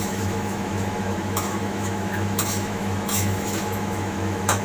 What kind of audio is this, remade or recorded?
remade